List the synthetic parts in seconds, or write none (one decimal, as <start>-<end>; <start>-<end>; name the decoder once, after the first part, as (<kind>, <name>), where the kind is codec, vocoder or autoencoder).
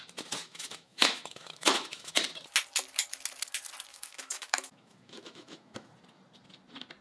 0.4-2.1 (autoencoder, DAC-VAE); 3.9-5.9